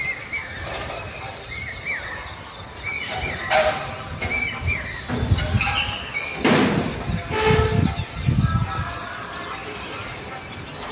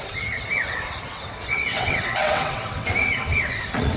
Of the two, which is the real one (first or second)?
first